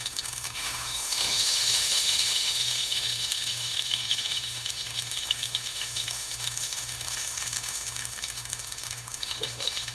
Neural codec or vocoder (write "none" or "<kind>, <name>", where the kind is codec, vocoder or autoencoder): autoencoder, DAC-VAE